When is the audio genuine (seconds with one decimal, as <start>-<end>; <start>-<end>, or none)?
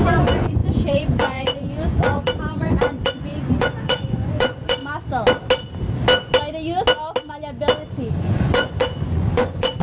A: 4.8-8.1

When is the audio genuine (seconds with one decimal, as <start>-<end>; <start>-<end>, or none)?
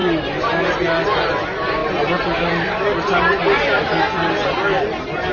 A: 0.0-5.3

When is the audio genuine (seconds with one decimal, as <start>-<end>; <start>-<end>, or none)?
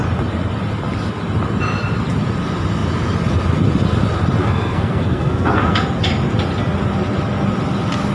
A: 0.0-4.4; 5.8-8.1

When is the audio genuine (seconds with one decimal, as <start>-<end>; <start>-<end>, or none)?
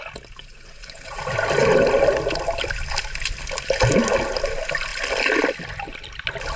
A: 0.0-0.4; 1.2-6.6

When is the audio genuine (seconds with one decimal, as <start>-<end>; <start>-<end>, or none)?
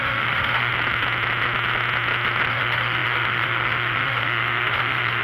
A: 0.7-2.5